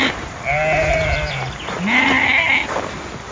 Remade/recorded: recorded